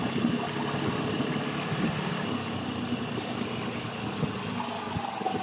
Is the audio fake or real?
real